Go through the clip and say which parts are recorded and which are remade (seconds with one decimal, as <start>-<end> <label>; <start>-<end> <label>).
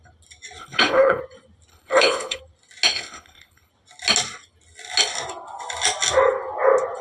0.0-0.6 recorded; 0.6-1.2 remade; 1.2-1.7 recorded; 1.7-2.4 remade; 2.4-2.9 recorded; 2.9-3.7 remade; 3.7-7.0 recorded